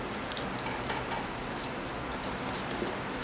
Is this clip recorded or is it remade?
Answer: recorded